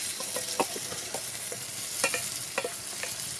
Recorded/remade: recorded